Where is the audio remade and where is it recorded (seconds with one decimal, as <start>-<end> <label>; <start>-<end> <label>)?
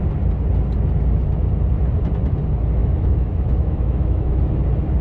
0.0-2.8 recorded; 2.8-4.6 remade; 4.6-5.0 recorded